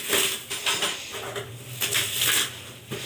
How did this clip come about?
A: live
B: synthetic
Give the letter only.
A